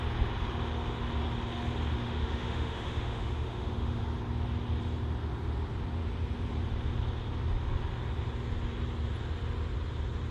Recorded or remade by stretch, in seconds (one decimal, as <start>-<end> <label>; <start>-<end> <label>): 0.0-1.9 recorded; 1.9-4.0 remade; 4.0-10.3 recorded